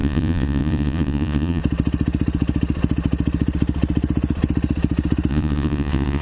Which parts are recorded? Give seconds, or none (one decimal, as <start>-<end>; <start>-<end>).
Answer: 1.6-5.3